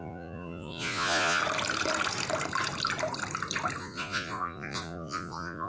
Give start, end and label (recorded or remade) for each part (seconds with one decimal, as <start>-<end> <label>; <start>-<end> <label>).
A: 0.0-1.4 remade; 1.4-3.8 recorded; 3.8-5.7 remade